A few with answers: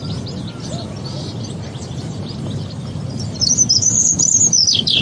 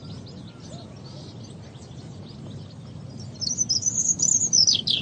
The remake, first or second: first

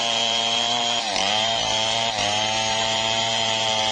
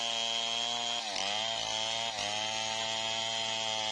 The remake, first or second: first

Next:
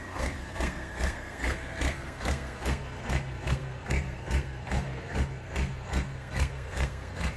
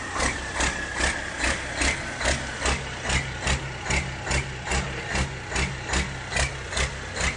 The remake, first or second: first